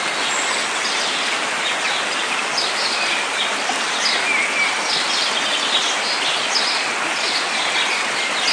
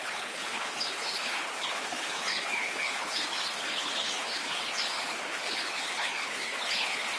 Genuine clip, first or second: first